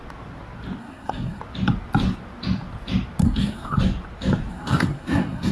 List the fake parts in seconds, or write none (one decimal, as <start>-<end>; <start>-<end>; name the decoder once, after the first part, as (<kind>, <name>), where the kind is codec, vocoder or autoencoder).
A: 0.8-1.4 (codec, SNAC); 3.2-3.8; 4.5-5.5